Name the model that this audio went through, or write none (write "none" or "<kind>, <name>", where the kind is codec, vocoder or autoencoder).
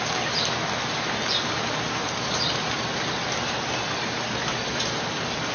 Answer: none